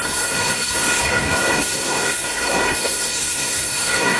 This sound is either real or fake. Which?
fake